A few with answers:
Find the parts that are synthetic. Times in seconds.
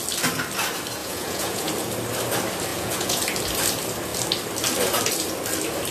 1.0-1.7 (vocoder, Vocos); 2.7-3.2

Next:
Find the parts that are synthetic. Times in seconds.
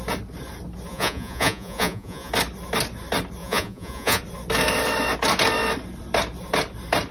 0.9-2.3 (vocoder, Vocos); 3.4-4.2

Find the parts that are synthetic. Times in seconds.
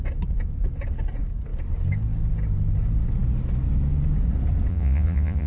4.7-5.5 (vocoder, Vocos)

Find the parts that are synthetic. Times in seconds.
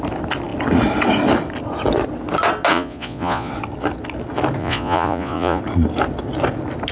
2.7-3.5 (vocoder, Vocos); 4.6-5.6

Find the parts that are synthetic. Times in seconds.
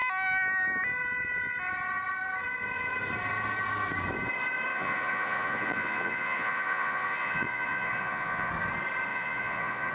4.7-8.5 (vocoder, Vocos); 9.1-9.9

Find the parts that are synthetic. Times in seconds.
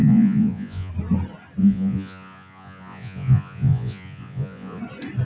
0.0-0.9 (vocoder, Vocos); 1.6-4.8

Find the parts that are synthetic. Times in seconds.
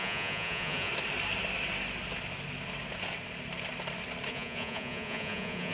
0.0-0.9 (vocoder, Vocos); 4.3-5.7